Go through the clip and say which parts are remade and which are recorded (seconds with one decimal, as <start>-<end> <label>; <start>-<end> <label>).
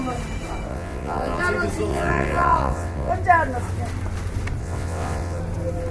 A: 0.0-0.7 recorded; 0.7-1.4 remade; 1.4-1.9 recorded; 1.9-3.1 remade; 3.1-4.6 recorded; 4.6-5.4 remade; 5.4-5.9 recorded